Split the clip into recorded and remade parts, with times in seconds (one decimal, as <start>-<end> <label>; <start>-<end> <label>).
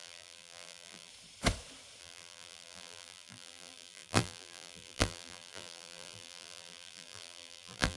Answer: 0.0-1.1 remade; 1.1-2.0 recorded; 2.0-8.0 remade